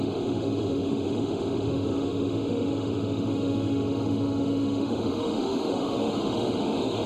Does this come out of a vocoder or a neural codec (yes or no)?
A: yes